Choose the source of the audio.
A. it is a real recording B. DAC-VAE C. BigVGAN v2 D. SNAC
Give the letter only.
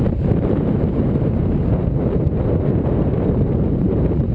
C